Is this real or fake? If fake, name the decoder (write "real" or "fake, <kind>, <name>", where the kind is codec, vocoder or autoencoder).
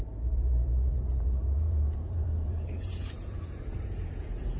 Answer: fake, vocoder, Vocos